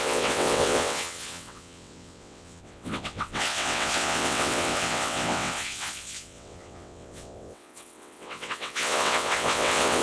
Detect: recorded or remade remade